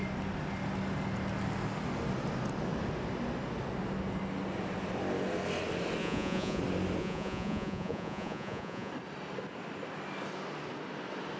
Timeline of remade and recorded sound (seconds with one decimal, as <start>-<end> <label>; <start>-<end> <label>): 0.0-6.0 recorded; 6.0-6.6 remade; 6.6-7.0 recorded; 7.0-8.9 remade; 8.9-11.4 recorded